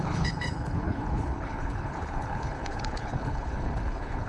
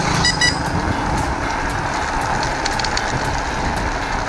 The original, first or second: second